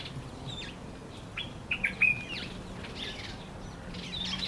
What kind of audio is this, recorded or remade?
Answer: recorded